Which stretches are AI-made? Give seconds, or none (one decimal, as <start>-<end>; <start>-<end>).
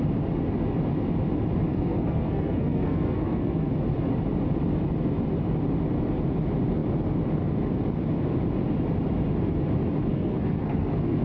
1.7-3.7; 10.1-11.2